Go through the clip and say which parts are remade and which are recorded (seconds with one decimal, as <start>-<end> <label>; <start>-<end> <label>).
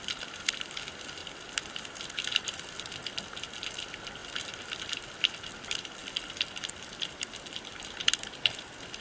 0.0-1.2 recorded; 1.2-2.9 remade; 2.9-6.0 recorded; 6.0-6.7 remade; 6.7-9.0 recorded